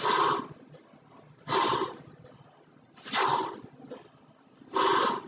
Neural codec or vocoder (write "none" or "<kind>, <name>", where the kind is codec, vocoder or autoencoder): none